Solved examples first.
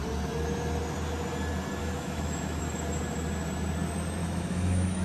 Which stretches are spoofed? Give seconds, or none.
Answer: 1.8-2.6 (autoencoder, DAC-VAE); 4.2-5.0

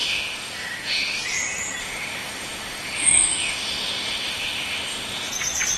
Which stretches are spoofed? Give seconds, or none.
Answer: 0.0-1.2 (autoencoder, DAC-VAE); 1.8-5.3